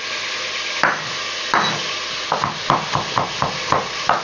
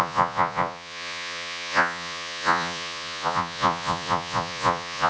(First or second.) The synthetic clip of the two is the second